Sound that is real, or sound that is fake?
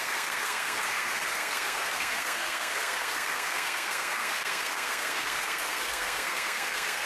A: fake